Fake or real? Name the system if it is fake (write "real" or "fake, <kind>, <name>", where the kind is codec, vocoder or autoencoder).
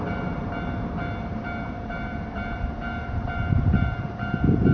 fake, vocoder, BigVGAN v2